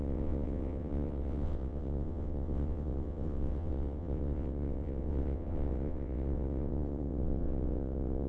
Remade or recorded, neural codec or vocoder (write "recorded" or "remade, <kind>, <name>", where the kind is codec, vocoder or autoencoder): remade, vocoder, WaveNeXt